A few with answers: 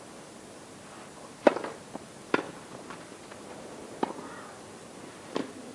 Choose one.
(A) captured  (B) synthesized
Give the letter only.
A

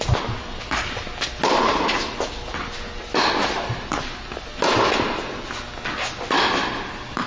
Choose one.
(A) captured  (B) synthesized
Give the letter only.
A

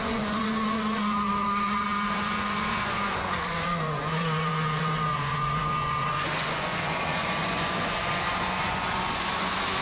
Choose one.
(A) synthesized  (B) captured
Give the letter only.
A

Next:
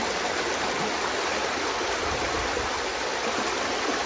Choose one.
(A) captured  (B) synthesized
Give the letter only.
A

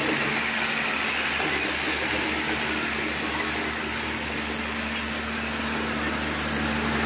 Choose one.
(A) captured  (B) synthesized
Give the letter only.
A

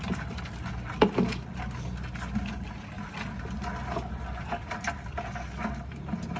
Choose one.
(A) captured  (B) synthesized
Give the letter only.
A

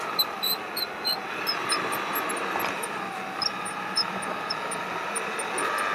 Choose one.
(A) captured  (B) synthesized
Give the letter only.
A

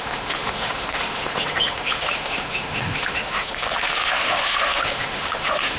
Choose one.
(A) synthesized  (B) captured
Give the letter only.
A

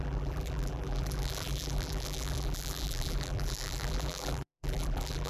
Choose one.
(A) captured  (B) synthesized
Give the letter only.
B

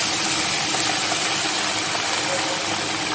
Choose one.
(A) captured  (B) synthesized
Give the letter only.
A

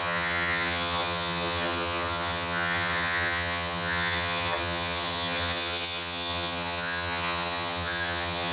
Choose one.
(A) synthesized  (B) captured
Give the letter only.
A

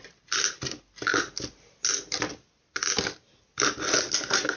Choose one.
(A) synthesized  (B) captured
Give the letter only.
B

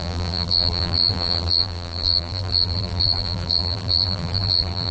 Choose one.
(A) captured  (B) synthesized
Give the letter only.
B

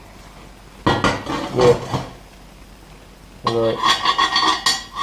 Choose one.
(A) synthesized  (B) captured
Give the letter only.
B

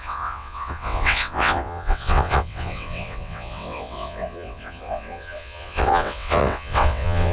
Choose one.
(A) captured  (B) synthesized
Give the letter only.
B